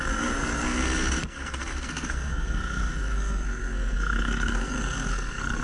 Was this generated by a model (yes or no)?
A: yes